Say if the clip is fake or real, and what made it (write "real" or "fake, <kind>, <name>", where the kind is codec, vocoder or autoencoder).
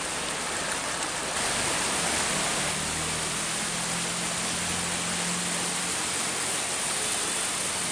real